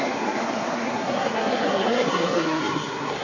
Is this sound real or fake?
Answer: fake